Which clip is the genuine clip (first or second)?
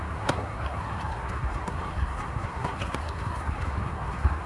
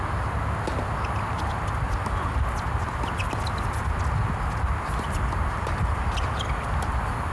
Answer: second